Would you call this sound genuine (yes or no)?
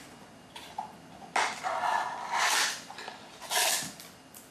yes